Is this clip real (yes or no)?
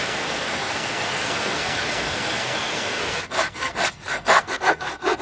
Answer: no